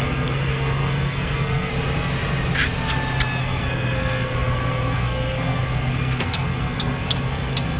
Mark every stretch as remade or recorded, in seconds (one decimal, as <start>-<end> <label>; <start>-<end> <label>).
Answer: 0.0-1.7 remade; 1.7-3.4 recorded; 3.4-7.8 remade